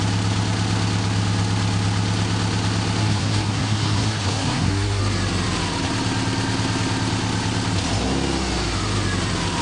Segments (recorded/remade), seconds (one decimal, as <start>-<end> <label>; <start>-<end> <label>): 0.0-3.0 recorded; 3.0-5.0 remade; 5.0-9.6 recorded